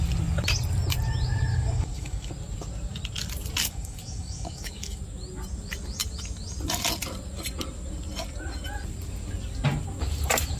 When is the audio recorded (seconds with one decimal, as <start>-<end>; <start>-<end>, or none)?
0.0-1.5; 2.3-3.6; 5.0-10.6